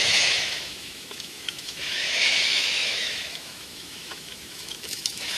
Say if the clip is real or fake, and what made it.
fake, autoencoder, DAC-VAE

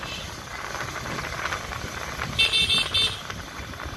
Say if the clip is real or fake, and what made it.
real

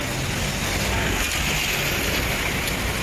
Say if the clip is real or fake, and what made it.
real